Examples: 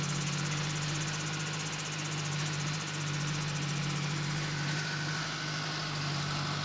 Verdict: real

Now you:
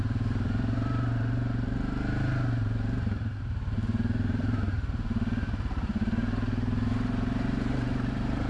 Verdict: fake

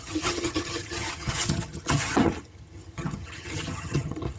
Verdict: fake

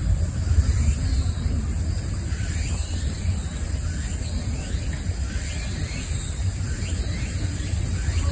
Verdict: real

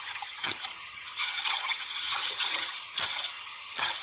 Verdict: fake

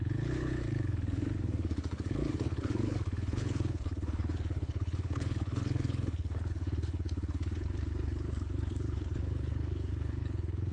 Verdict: fake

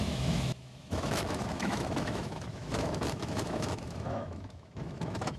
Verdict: fake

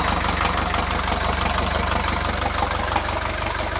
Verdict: real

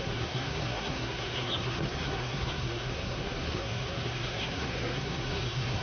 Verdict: fake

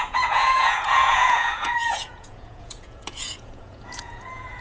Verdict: fake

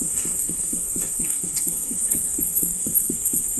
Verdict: fake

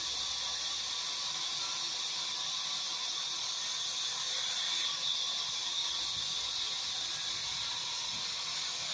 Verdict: real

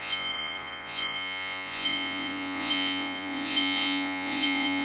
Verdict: fake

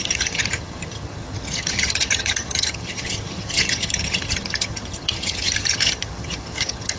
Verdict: fake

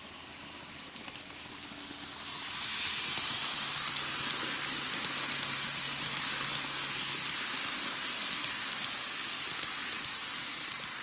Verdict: real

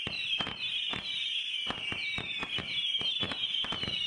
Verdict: fake